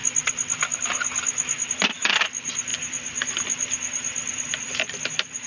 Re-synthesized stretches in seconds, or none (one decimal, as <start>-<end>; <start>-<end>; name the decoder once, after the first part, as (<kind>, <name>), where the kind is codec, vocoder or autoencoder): 1.7-5.5 (vocoder, BigVGAN v2)